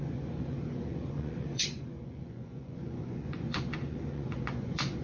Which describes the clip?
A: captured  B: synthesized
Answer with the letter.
B